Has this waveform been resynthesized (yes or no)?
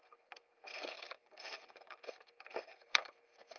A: yes